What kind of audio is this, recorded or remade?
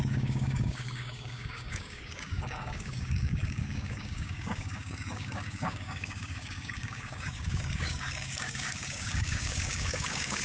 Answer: remade